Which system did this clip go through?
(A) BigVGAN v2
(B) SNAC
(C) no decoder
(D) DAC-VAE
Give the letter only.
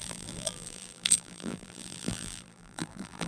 A